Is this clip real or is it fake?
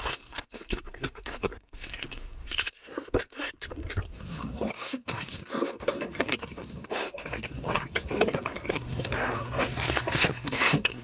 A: fake